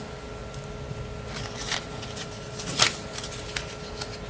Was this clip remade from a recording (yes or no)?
no